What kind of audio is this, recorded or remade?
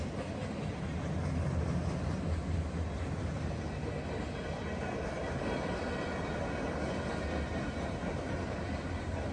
recorded